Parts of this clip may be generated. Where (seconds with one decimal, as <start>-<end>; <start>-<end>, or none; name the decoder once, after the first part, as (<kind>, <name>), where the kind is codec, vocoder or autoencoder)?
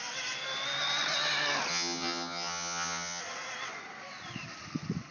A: 1.7-3.2 (vocoder, HiFi-GAN)